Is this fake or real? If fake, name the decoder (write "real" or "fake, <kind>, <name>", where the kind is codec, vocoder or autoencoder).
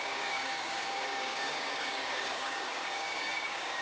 fake, codec, DAC